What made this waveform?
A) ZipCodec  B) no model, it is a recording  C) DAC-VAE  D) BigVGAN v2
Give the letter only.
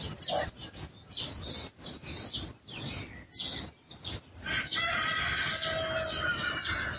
B